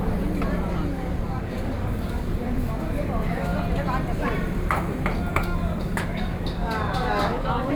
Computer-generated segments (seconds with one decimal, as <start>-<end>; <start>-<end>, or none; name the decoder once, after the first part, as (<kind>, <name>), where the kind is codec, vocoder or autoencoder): 0.9-3.5 (codec, DAC); 5.3-7.8